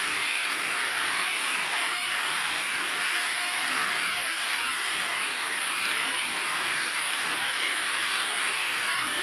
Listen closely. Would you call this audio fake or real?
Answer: fake